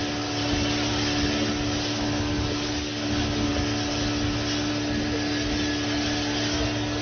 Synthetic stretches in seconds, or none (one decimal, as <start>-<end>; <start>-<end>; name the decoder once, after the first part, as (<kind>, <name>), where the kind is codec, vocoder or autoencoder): none

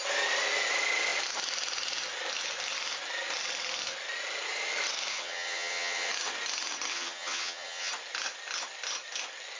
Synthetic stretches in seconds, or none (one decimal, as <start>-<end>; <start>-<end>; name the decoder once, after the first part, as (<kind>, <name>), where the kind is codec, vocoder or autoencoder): 5.1-6.1 (vocoder, HiFi-GAN); 6.9-7.9

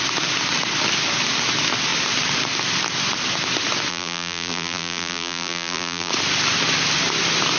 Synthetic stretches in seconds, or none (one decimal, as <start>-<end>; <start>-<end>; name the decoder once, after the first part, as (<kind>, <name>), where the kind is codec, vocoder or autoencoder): 3.9-6.1 (vocoder, BigVGAN v2)

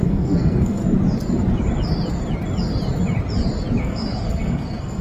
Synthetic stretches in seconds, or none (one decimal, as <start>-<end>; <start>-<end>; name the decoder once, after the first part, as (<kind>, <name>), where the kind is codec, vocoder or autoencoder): 0.0-0.8 (codec, SNAC); 3.8-5.0